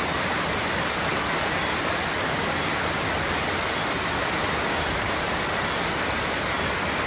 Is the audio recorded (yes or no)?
yes